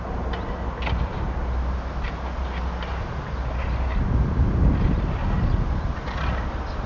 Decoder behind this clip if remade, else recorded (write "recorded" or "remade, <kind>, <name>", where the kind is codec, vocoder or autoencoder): recorded